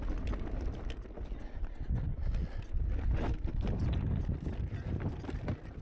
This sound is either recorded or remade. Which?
recorded